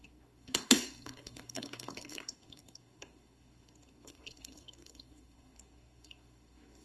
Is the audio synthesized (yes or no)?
yes